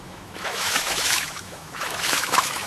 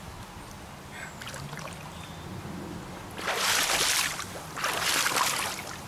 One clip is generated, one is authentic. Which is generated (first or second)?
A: first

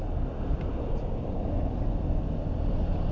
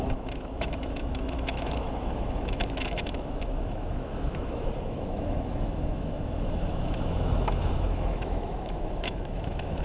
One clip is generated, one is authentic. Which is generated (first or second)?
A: second